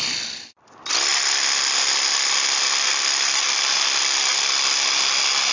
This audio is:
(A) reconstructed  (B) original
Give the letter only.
B